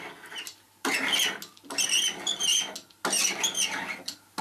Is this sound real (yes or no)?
yes